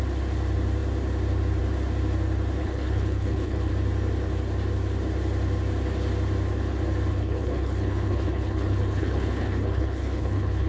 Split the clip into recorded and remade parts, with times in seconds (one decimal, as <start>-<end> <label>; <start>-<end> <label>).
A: 0.0-2.6 recorded; 2.6-3.7 remade; 3.7-7.1 recorded; 7.1-10.7 remade